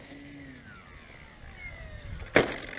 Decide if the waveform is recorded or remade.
recorded